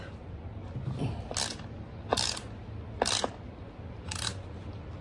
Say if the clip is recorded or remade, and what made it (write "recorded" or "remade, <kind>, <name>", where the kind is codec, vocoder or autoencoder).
recorded